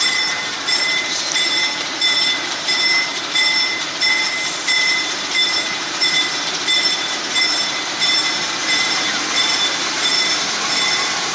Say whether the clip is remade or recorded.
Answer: remade